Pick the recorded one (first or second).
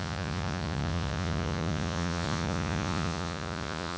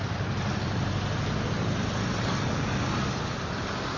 second